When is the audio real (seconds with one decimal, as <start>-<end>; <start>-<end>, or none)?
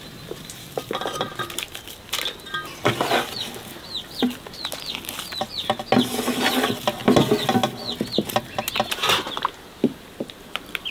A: 0.0-10.9